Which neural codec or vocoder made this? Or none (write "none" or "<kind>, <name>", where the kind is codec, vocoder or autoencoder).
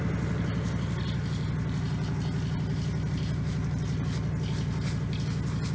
none